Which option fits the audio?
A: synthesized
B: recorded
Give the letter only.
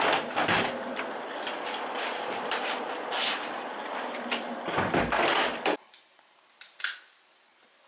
B